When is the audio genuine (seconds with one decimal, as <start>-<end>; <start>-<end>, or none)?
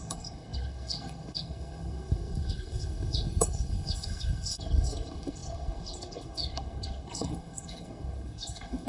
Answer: none